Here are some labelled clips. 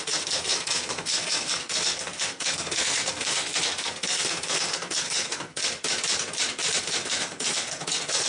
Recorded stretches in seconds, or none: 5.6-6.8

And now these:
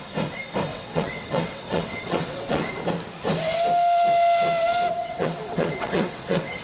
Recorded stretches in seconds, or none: 0.0-0.7; 2.7-5.0

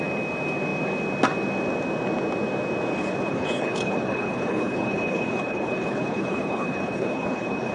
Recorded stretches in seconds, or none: 0.0-3.0

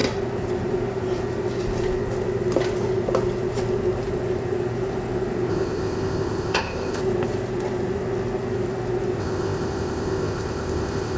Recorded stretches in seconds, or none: 0.0-5.5; 7.0-9.2